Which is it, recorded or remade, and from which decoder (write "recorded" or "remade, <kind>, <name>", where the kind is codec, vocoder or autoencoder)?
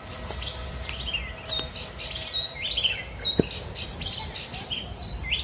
recorded